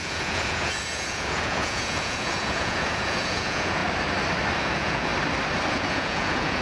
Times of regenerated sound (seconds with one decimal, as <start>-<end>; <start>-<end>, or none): 0.0-3.8; 4.6-5.1; 5.7-6.6